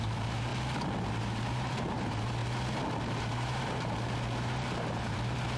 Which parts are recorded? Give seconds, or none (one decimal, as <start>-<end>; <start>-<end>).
0.5-1.1; 2.4-3.0